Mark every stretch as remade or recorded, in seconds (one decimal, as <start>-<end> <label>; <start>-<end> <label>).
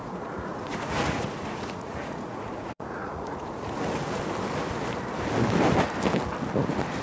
0.0-4.2 remade; 4.2-7.0 recorded